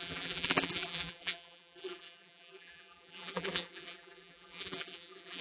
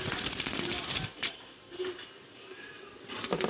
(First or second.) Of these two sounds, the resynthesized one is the first